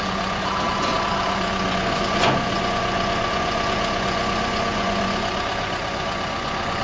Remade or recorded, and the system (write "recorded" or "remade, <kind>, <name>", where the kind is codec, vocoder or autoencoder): remade, vocoder, Vocos